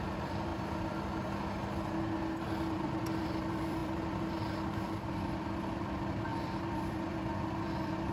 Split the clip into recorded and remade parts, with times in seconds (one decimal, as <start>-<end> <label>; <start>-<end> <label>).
0.0-0.5 remade; 0.5-2.4 recorded; 2.4-8.1 remade